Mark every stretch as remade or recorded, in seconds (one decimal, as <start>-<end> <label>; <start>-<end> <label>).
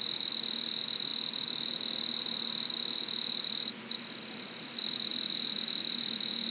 0.0-6.5 recorded